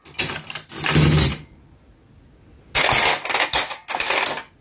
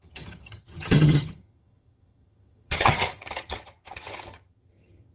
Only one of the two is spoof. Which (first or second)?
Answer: second